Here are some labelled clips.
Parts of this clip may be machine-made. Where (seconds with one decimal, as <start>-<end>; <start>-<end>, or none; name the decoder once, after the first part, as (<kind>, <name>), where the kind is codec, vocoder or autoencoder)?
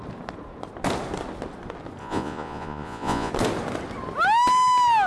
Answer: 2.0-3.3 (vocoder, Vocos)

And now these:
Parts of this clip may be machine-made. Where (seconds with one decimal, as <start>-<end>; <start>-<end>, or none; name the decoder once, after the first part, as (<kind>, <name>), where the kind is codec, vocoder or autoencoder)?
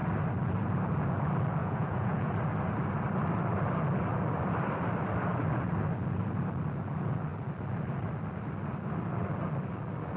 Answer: 1.6-2.3 (vocoder, Vocos)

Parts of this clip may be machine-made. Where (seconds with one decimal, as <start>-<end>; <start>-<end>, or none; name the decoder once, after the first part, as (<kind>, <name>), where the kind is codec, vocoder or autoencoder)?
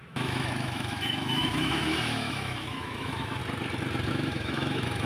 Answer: 0.0-3.4 (autoencoder, DAC-VAE); 4.1-5.1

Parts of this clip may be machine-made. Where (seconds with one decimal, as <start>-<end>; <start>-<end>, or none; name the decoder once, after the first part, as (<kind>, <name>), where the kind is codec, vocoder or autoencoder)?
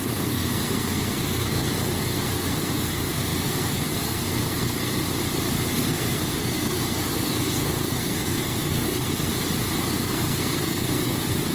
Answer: 0.0-5.1 (codec, SNAC); 5.7-9.3; 9.8-11.5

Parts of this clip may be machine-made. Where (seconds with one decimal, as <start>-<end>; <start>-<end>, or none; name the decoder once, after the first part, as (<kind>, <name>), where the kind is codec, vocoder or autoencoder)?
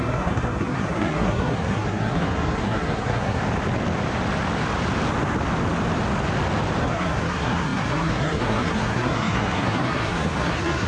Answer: 0.0-3.4 (codec, SNAC); 6.8-10.9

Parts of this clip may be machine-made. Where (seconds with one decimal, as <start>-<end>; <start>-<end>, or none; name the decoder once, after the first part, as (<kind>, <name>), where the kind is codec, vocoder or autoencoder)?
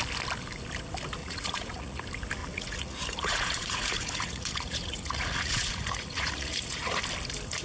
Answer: 1.2-2.0 (vocoder, Vocos); 2.4-7.0